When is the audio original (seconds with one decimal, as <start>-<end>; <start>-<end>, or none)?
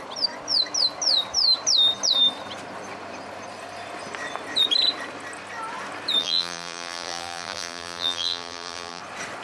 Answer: 0.0-6.2; 9.0-9.4